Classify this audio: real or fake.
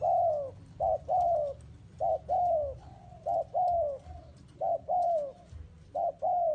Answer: real